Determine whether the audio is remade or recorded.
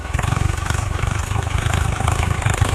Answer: remade